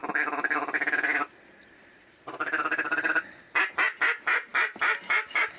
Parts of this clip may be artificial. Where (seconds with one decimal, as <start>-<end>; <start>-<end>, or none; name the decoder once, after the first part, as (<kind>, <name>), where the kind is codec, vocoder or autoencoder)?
0.0-3.4 (vocoder, BigVGAN v2); 4.5-5.6